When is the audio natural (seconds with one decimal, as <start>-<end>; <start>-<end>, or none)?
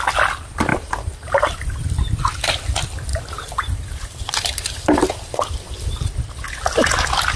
0.0-0.7; 1.9-3.1; 6.1-7.4